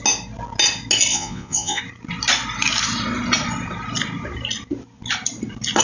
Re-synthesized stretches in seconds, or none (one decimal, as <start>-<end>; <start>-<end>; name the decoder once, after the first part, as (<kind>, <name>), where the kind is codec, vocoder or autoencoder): 1.1-1.8 (vocoder, Vocos)

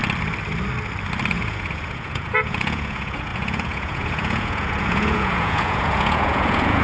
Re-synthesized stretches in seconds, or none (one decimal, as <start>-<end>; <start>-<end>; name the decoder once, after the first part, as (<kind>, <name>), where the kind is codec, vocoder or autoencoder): 1.4-6.8 (vocoder, Vocos)

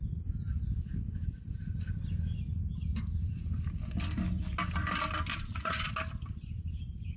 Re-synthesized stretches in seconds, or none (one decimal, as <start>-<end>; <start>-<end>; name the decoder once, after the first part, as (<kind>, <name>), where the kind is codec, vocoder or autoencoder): 5.3-5.9 (vocoder, Vocos)

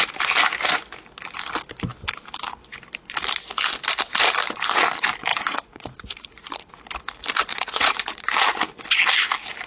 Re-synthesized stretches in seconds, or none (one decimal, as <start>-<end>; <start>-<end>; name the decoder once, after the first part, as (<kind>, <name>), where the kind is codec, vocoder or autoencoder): 5.3-6.7 (vocoder, Vocos); 7.5-8.3

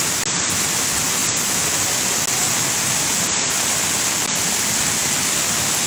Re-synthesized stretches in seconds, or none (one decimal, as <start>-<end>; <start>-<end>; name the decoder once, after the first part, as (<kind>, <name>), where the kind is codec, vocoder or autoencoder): none

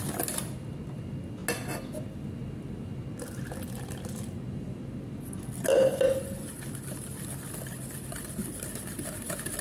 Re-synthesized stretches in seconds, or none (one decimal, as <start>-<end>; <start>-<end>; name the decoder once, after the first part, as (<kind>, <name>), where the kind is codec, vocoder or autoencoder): none

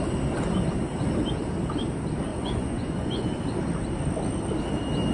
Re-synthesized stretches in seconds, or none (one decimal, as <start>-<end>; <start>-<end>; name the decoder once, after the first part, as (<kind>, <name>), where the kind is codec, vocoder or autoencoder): 2.3-3.4 (vocoder, Vocos)